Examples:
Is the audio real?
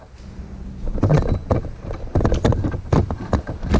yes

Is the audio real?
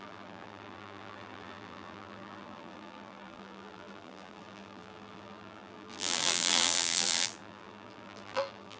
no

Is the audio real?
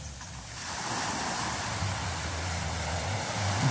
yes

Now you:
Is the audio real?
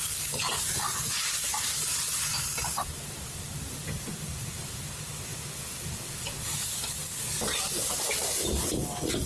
yes